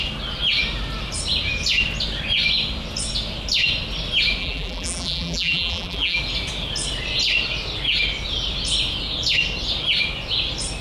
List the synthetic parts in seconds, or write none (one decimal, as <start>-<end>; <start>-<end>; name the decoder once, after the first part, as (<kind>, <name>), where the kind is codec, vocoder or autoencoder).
4.4-6.2 (vocoder, BigVGAN v2)